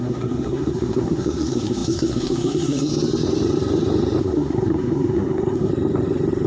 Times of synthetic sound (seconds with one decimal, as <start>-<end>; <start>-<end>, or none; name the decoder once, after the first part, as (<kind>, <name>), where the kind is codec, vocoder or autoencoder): 0.0-2.9 (codec, SNAC); 4.2-5.7